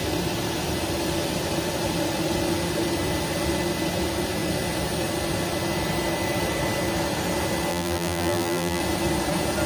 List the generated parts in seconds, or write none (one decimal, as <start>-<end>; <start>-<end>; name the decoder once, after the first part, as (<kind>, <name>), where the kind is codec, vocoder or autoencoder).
7.7-8.8 (vocoder, BigVGAN v2)